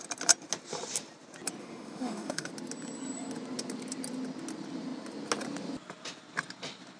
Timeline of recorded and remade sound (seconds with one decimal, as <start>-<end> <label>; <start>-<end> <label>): 0.0-1.6 recorded; 1.6-2.5 remade; 2.5-7.0 recorded